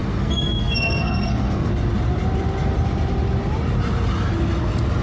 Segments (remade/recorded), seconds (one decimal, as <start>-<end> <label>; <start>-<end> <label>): 0.0-1.7 remade; 1.7-5.0 recorded